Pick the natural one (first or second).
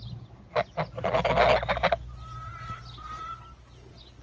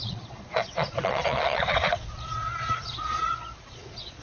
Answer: first